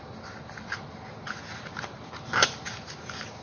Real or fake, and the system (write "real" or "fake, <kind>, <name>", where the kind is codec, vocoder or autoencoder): real